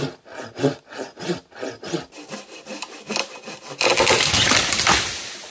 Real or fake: real